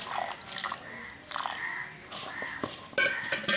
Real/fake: real